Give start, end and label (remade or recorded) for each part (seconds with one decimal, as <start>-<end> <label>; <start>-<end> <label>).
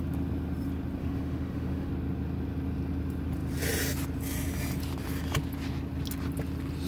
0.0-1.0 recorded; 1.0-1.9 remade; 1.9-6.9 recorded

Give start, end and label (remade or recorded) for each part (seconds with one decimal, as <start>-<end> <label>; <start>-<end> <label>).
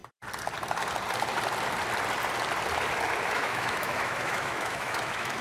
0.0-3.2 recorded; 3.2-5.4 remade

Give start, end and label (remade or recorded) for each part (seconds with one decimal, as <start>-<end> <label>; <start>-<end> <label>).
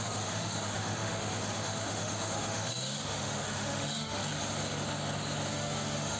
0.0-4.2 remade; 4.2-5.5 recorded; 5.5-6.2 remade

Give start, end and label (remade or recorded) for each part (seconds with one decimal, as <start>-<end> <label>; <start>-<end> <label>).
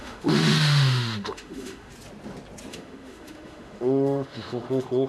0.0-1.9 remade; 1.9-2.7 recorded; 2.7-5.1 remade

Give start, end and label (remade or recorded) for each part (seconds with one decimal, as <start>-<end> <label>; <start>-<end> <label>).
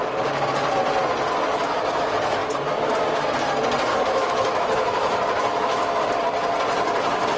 0.0-3.9 recorded; 3.9-6.0 remade; 6.0-7.4 recorded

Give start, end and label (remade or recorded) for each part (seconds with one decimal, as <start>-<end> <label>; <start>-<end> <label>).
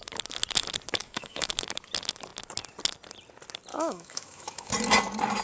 0.0-1.0 recorded; 1.0-1.5 remade; 1.5-3.7 recorded; 3.7-4.7 remade; 4.7-5.4 recorded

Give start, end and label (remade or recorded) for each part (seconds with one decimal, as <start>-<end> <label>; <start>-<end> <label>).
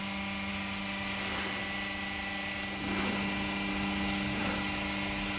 0.0-5.4 recorded